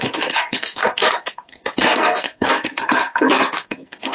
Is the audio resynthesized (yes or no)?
yes